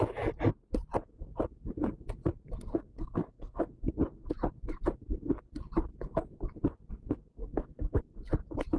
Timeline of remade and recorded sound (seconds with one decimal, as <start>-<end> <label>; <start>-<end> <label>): 0.0-2.7 recorded; 2.7-3.7 remade; 3.7-7.4 recorded; 7.4-8.0 remade; 8.0-8.8 recorded